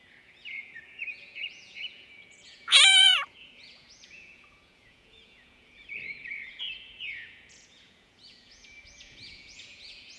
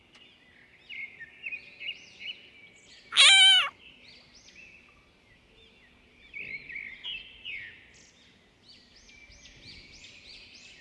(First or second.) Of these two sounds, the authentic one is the second